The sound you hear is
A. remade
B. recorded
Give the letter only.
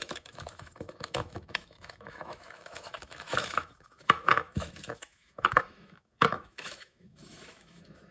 A